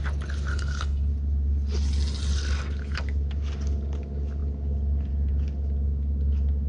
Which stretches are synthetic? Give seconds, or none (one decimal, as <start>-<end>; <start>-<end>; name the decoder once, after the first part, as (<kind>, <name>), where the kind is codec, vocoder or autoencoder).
0.5-1.1 (codec, HILCodec)